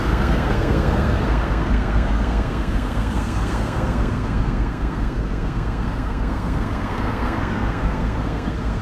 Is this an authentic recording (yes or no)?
no